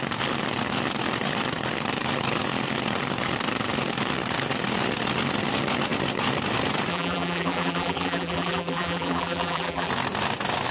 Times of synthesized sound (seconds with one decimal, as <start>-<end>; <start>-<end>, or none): 6.9-9.9